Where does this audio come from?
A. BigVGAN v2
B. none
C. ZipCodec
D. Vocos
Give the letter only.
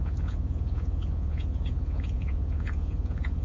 D